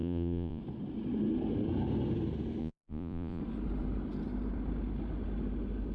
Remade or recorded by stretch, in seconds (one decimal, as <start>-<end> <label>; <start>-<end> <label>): 0.0-0.6 remade; 0.6-2.6 recorded; 2.6-3.4 remade; 3.4-5.9 recorded